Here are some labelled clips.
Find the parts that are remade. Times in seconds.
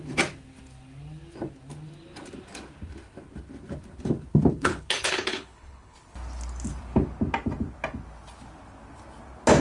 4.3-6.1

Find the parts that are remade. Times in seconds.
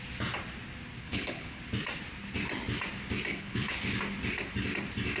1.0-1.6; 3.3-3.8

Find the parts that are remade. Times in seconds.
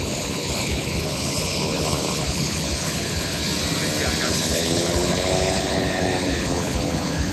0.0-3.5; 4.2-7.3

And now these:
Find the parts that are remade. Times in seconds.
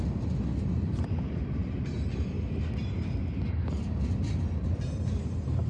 none